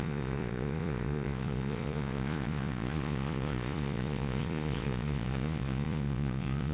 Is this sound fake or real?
fake